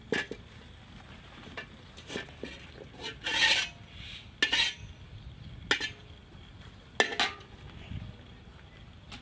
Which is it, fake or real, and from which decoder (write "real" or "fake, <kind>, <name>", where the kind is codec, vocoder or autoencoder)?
real